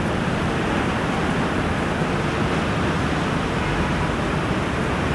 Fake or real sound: real